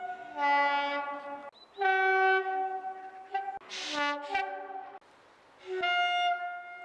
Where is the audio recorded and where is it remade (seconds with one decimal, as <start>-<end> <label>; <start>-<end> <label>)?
0.0-6.8 recorded